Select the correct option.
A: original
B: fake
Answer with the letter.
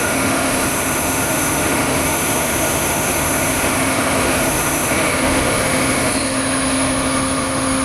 B